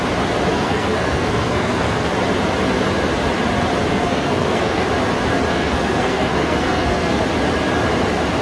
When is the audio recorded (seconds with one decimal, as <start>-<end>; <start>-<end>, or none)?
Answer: 0.0-0.5; 2.1-3.9; 4.9-5.5; 7.2-8.4